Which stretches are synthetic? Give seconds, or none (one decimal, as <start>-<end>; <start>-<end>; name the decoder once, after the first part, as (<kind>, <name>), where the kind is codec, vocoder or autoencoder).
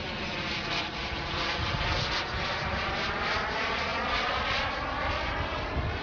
5.5-6.0 (vocoder, BigVGAN v2)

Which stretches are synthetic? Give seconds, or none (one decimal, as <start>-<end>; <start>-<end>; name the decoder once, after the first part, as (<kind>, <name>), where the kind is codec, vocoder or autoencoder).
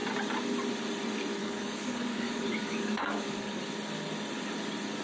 1.4-3.6 (codec, DAC)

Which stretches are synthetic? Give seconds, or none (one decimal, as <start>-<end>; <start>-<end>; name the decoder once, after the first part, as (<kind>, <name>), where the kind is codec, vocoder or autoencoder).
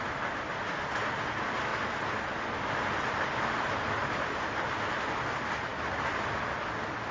none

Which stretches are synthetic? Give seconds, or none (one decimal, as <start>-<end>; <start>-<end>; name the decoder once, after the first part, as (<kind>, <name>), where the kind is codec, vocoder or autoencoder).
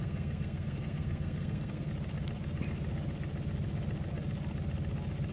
0.0-1.9 (codec, SNAC)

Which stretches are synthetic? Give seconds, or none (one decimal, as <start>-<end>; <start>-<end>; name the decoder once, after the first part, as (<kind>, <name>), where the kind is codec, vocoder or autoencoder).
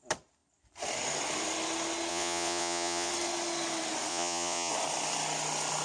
2.1-3.1 (vocoder, Vocos); 4.1-4.7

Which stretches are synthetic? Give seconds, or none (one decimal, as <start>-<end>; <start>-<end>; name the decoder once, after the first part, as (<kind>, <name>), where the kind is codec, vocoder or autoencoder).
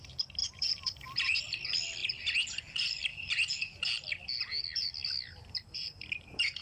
0.4-1.4 (vocoder, BigVGAN v2); 4.8-6.6